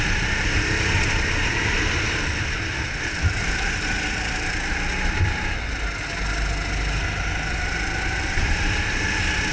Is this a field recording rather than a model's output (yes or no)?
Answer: yes